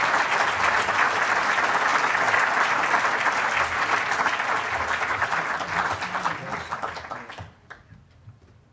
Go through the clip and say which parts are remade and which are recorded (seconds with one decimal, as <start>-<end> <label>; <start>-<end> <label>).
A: 0.0-8.7 recorded